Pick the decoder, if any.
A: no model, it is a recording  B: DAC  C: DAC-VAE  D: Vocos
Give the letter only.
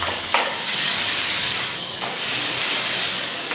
B